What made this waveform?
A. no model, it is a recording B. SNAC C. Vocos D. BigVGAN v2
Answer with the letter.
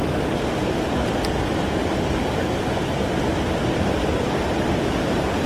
D